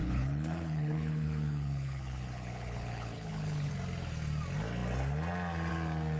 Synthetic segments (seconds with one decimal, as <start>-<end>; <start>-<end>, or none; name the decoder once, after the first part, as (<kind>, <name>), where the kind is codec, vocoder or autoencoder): 0.0-3.7 (codec, HILCodec)

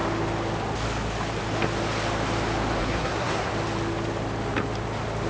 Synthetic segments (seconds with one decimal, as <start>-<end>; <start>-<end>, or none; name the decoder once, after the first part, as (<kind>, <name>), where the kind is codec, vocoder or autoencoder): 2.8-3.5 (codec, SNAC)